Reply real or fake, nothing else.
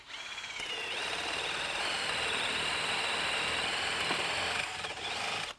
real